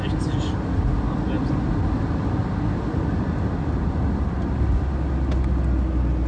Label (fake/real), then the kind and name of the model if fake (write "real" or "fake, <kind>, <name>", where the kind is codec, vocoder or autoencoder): real